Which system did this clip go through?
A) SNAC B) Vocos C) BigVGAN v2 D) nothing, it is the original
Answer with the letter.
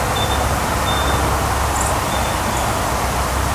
D